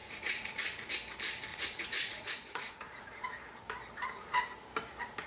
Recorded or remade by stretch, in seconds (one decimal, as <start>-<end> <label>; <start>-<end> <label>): 0.0-0.9 remade; 0.9-1.5 recorded; 1.5-3.1 remade; 3.1-5.3 recorded